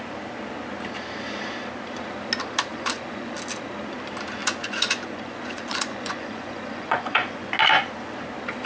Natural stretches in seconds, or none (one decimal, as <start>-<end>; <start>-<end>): 0.0-2.7; 3.3-4.4; 7.5-8.7